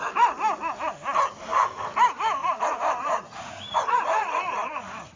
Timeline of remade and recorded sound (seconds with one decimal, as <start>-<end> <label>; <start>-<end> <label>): 0.0-2.4 recorded; 2.4-5.2 remade